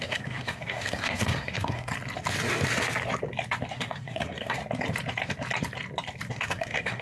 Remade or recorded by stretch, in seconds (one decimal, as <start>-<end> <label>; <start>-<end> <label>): 0.0-1.9 remade; 1.9-3.7 recorded; 3.7-4.6 remade; 4.6-6.3 recorded; 6.3-7.0 remade